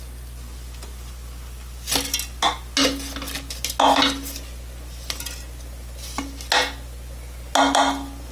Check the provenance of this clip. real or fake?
real